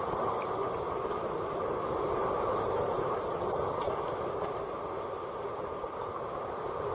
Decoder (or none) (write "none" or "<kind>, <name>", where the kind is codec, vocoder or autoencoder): none